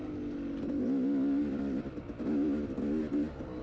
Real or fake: real